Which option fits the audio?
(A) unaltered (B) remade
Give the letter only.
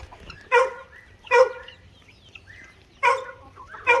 A